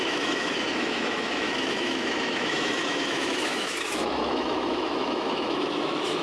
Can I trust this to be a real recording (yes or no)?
no